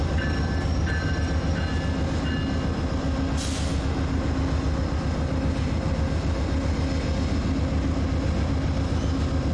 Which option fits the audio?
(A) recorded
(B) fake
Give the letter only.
A